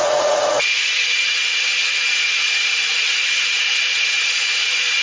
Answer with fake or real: fake